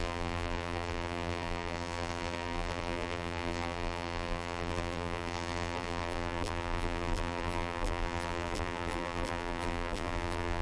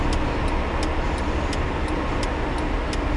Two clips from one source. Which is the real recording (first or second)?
second